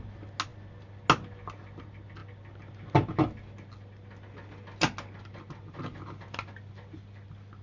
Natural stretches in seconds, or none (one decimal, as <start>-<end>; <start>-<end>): 0.0-7.6